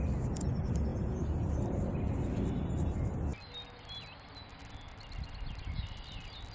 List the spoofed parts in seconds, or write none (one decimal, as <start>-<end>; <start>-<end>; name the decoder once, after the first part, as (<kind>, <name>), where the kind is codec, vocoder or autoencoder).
0.9-1.5 (vocoder, Vocos)